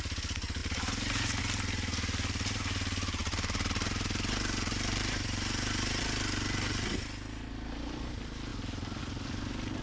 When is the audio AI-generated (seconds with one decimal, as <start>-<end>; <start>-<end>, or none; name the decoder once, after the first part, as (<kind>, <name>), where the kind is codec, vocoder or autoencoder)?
0.6-1.4 (vocoder, BigVGAN v2); 3.2-6.0

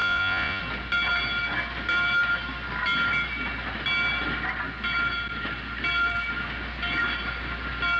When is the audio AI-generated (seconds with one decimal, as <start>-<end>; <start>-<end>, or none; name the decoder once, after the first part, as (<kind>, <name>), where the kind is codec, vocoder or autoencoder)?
0.0-0.6 (vocoder, Vocos)